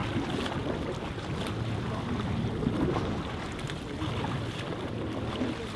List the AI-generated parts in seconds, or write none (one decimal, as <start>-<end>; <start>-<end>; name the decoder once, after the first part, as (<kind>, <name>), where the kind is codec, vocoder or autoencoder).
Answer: none